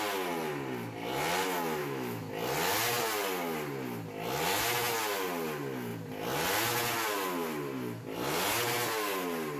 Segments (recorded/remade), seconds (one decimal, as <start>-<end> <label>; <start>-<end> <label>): 0.0-1.8 recorded; 1.8-2.3 remade; 2.3-9.6 recorded